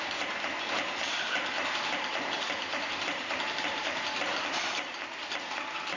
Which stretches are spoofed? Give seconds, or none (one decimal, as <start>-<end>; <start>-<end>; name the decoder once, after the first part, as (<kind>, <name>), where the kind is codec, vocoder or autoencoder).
4.3-5.3 (vocoder, BigVGAN v2)